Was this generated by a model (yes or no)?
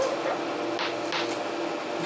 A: no